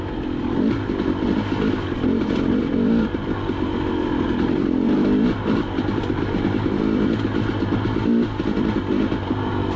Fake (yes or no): no